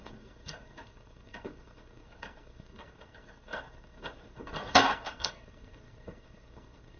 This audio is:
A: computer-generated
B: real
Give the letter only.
A